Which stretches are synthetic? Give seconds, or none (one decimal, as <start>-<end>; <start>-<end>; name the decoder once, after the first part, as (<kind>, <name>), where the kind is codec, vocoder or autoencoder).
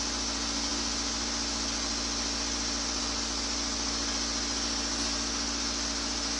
none